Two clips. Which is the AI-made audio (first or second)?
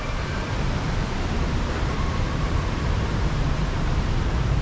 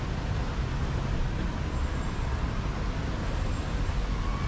first